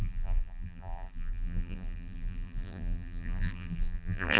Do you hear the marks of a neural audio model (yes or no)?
yes